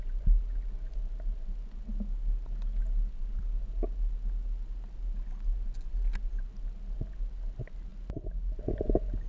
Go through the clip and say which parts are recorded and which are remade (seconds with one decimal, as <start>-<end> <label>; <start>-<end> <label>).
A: 0.0-9.3 recorded